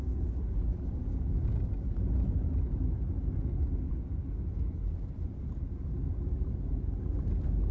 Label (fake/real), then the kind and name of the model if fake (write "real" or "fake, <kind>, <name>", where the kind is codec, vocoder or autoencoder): real